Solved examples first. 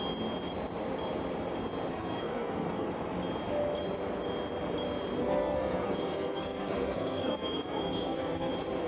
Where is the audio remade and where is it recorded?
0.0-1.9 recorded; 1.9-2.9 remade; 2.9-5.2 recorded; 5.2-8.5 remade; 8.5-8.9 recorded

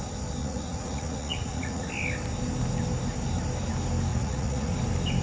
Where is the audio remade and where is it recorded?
0.0-0.4 recorded; 0.4-1.9 remade; 1.9-4.1 recorded; 4.1-4.7 remade; 4.7-5.2 recorded